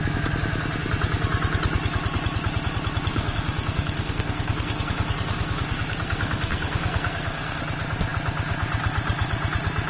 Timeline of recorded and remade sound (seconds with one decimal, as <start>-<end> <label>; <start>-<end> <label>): 0.0-3.1 recorded; 3.1-7.6 remade; 7.6-9.9 recorded